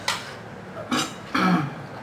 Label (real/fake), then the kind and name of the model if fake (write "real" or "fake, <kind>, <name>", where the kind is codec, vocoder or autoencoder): real